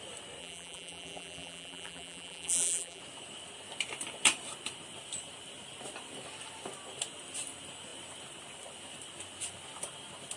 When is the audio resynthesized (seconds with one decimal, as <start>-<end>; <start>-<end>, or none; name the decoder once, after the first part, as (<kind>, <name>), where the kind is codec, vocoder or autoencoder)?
0.4-3.0 (vocoder, BigVGAN v2)